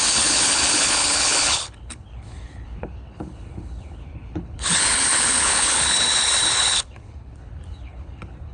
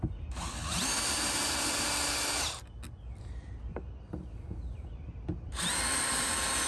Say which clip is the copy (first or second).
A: first